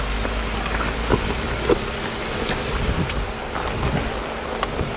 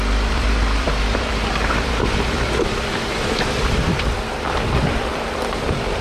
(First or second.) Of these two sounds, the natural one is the first